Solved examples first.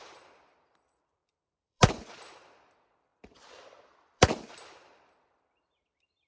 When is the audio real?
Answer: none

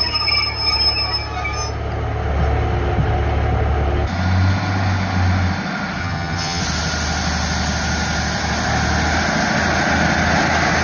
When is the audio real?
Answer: 0.0-6.0; 6.6-10.8

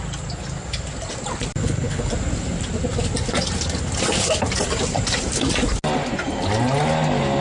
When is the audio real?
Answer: 0.0-1.6; 2.1-7.4

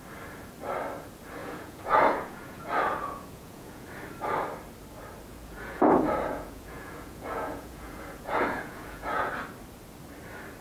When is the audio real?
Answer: 0.0-1.4; 3.9-5.3; 9.3-10.6

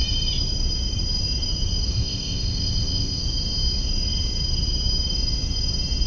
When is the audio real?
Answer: 0.0-1.9; 3.2-6.1

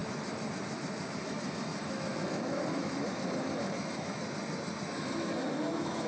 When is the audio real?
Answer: 0.0-1.2; 4.2-5.0

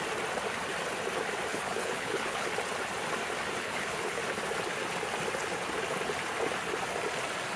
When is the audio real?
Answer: 0.0-1.5; 2.5-3.6; 4.2-7.6

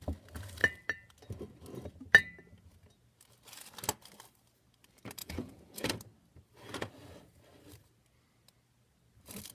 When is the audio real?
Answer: 0.0-5.2; 5.9-9.5